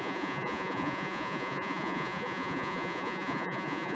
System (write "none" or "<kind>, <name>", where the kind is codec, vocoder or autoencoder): vocoder, Vocos